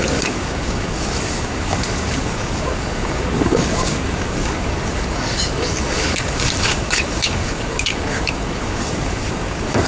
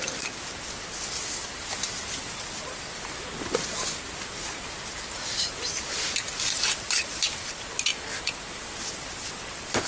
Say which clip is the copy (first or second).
first